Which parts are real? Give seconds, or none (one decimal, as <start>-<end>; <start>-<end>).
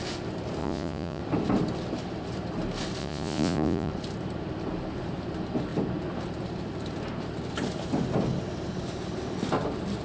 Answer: 0.0-0.6; 1.2-3.0; 3.9-10.0